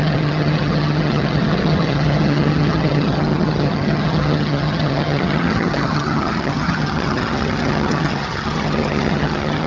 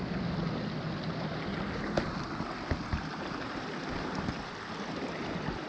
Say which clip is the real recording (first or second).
second